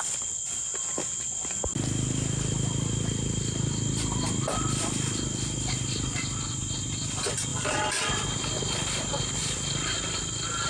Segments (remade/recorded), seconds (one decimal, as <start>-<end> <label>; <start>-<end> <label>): 0.0-7.5 recorded; 7.5-8.1 remade; 8.1-10.7 recorded